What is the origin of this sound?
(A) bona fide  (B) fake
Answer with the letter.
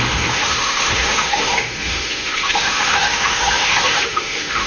B